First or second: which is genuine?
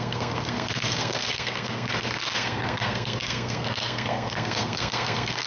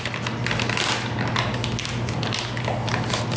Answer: second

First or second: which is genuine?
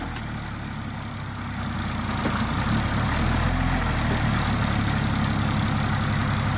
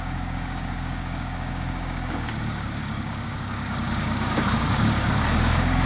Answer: first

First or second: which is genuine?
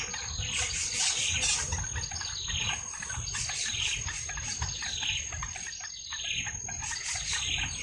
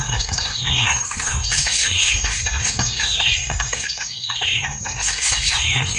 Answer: first